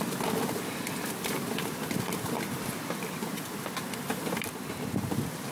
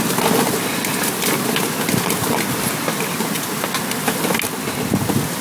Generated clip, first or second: first